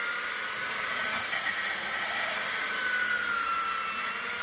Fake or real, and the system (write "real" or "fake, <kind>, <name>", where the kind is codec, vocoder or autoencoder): real